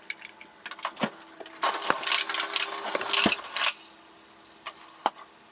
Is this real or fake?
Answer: real